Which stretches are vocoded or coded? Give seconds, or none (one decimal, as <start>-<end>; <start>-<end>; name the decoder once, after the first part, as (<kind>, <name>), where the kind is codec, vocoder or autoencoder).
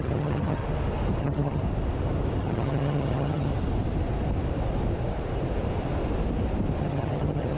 0.0-0.6 (vocoder, HiFi-GAN); 1.2-1.6; 2.4-3.5; 6.8-7.6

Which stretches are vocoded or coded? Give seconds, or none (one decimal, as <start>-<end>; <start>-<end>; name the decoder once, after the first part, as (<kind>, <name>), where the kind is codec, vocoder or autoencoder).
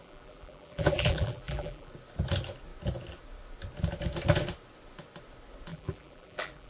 0.0-1.9 (vocoder, BigVGAN v2); 5.7-6.7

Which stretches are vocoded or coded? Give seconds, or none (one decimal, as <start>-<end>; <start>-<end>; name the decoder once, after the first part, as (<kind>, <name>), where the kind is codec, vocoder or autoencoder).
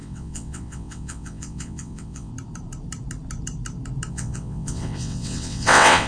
0.0-2.3 (vocoder, WaveNeXt); 4.1-6.1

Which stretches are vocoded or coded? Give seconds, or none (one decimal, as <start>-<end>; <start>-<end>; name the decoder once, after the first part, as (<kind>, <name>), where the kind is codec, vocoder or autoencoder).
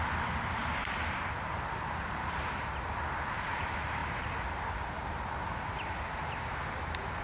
0.0-0.6 (vocoder, BigVGAN v2); 1.4-4.0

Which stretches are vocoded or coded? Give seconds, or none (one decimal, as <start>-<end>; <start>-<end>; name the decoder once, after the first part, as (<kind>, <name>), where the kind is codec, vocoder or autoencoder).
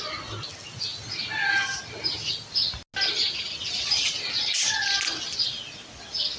none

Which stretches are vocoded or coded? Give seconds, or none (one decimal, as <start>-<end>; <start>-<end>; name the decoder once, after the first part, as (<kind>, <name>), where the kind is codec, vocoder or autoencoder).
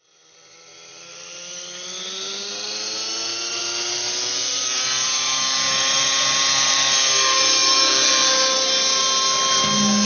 none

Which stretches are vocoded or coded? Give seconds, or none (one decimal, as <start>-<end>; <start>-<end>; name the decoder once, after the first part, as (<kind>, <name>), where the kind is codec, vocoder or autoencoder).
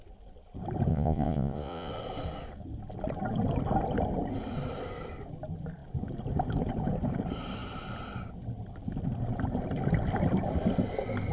0.9-1.9 (vocoder, Vocos)